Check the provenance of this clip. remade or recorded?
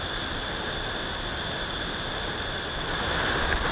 remade